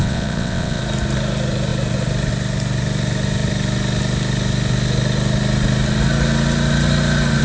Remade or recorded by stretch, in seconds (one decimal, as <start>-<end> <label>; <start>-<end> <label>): 0.0-0.8 remade; 0.8-7.4 recorded